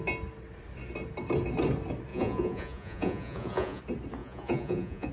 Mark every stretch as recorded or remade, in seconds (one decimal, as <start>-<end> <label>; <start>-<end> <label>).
0.0-2.1 recorded; 2.1-3.8 remade; 3.8-4.2 recorded; 4.2-5.1 remade